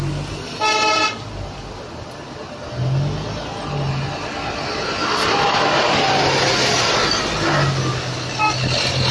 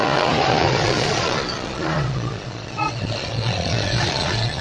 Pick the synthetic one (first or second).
second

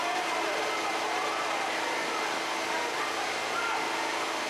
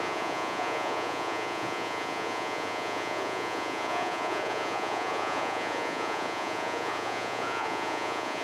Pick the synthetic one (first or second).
second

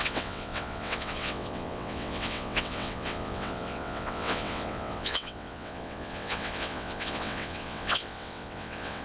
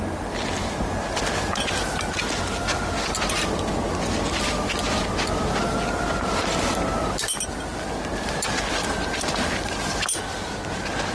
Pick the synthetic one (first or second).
first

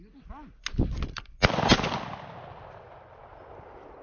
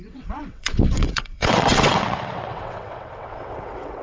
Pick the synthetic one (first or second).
second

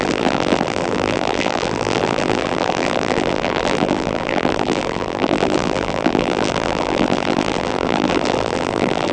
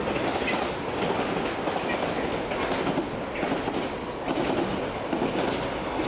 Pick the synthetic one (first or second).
first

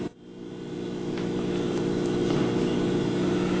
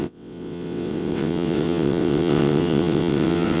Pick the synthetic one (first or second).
second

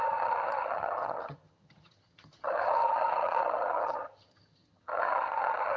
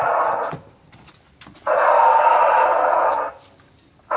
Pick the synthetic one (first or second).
first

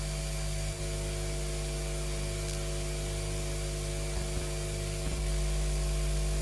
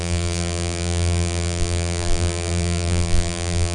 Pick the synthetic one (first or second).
second